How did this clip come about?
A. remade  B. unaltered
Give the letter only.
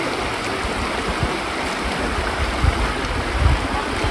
B